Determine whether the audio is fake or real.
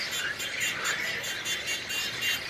real